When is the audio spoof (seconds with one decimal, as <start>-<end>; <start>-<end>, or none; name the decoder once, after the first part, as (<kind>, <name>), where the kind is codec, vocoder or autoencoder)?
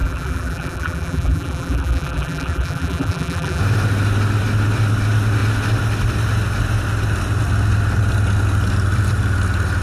0.0-3.6 (vocoder, BigVGAN v2)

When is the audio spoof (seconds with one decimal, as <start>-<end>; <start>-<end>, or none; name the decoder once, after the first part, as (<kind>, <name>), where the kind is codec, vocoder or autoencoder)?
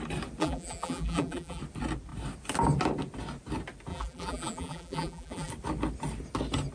0.4-1.6 (vocoder, BigVGAN v2); 3.9-5.5